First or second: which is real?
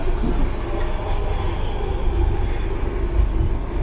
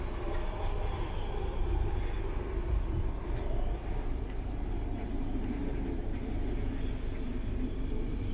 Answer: first